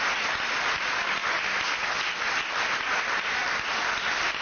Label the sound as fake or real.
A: real